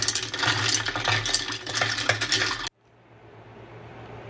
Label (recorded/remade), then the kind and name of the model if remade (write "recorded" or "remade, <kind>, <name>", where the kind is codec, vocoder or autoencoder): recorded